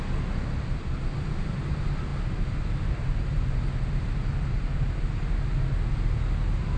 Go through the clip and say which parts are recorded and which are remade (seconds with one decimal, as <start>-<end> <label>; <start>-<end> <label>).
0.0-6.8 recorded